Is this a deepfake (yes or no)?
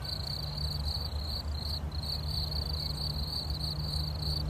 no